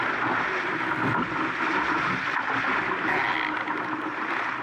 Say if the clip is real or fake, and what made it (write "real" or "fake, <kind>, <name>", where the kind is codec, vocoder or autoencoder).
real